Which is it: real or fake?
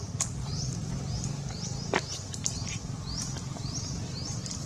real